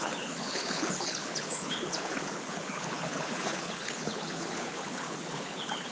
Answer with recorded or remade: remade